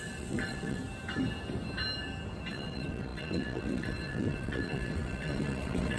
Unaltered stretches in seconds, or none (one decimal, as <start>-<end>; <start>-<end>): 0.8-2.5